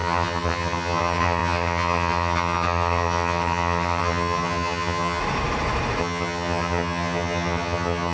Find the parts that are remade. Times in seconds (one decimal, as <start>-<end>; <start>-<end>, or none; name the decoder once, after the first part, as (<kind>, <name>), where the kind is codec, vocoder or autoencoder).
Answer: 0.0-5.2 (vocoder, HiFi-GAN); 6.0-8.1